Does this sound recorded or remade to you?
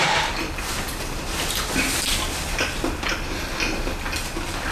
recorded